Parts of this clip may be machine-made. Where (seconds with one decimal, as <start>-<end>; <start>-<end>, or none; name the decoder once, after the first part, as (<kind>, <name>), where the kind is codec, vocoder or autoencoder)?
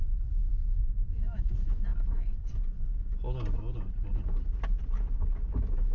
0.4-1.5 (autoencoder, DAC-VAE)